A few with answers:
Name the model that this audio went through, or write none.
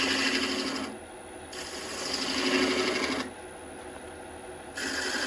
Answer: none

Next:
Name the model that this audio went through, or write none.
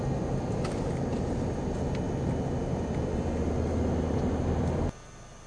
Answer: none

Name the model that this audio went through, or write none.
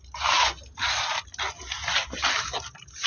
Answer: none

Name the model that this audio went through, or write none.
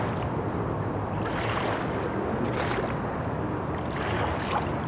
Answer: none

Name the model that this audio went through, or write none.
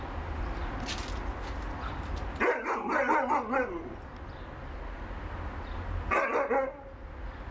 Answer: none